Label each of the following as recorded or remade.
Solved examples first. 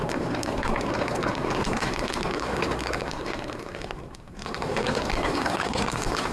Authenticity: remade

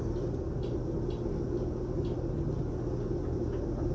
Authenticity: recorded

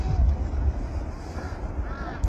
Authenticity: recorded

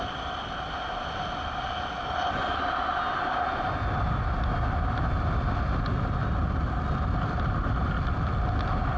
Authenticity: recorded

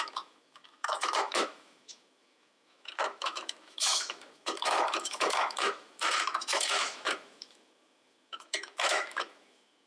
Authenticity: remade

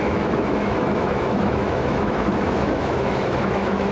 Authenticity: remade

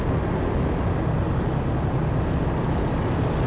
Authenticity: recorded